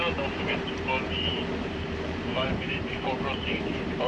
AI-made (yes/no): yes